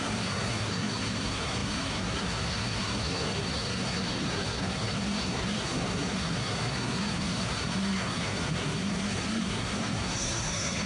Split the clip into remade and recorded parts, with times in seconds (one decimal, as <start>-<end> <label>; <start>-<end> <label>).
0.0-10.9 remade